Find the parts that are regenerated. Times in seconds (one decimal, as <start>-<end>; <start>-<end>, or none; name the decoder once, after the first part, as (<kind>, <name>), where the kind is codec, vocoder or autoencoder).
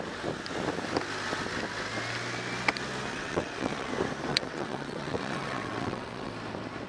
3.1-3.9 (vocoder, WaveNeXt); 4.3-6.3